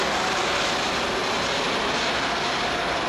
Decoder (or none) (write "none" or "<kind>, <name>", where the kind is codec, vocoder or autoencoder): none